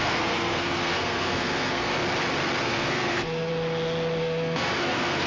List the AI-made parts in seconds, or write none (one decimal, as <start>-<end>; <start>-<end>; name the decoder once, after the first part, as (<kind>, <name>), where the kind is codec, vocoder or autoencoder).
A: 0.0-1.9 (codec, SNAC); 2.6-3.5; 4.2-5.3